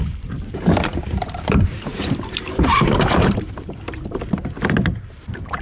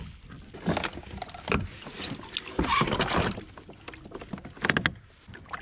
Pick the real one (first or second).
second